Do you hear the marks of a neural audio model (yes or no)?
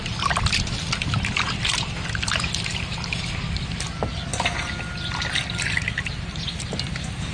no